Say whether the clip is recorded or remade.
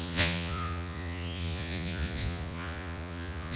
remade